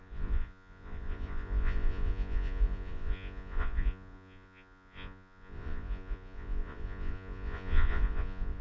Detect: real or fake fake